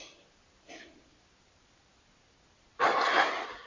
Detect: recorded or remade recorded